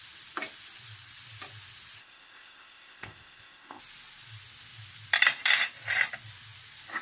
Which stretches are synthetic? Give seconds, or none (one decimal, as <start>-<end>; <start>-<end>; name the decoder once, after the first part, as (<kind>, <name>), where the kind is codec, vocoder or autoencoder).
2.0-3.8 (codec, ZipCodec)